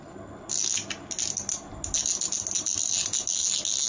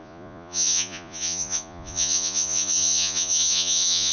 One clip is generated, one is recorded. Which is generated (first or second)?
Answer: second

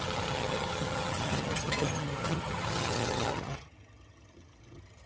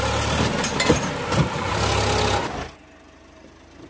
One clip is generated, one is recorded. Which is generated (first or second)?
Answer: first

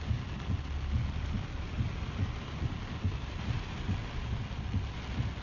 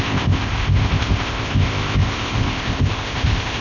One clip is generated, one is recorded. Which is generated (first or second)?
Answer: second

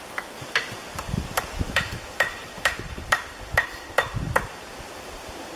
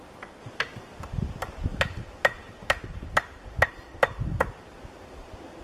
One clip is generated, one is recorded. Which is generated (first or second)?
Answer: first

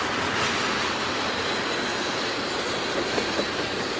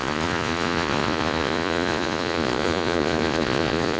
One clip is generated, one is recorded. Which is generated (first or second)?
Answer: second